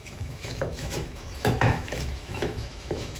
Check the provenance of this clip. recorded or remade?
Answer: remade